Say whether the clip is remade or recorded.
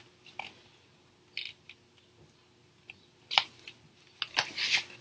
recorded